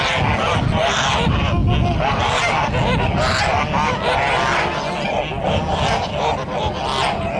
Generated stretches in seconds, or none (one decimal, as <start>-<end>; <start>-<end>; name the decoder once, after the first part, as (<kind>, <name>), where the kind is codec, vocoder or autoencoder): none